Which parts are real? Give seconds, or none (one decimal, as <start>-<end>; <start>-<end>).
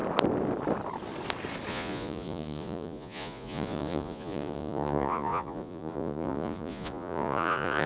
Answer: 0.0-1.7